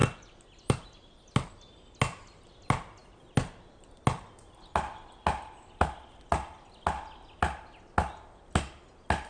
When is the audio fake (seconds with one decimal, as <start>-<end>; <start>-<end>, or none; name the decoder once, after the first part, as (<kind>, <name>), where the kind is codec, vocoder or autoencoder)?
none